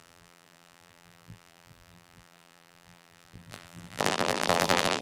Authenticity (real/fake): fake